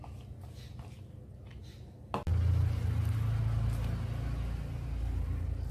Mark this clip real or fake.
real